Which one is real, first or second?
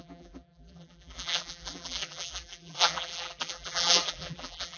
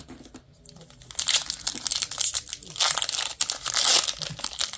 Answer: second